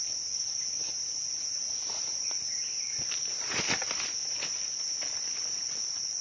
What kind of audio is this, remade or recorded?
recorded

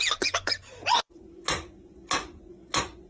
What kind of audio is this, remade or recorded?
remade